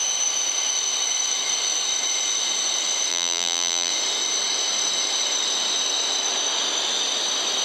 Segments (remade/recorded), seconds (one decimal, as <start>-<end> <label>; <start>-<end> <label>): 0.0-3.1 recorded; 3.1-3.9 remade; 3.9-7.6 recorded